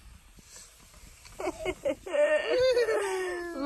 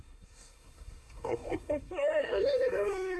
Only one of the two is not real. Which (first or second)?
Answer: second